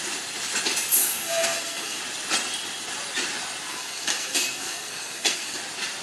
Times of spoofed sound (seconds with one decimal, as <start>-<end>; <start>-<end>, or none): 1.0-2.0; 3.7-5.6